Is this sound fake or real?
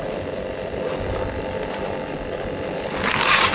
real